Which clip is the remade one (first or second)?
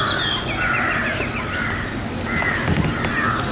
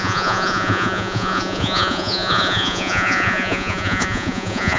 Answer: second